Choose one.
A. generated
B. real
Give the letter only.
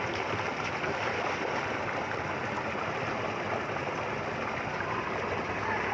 B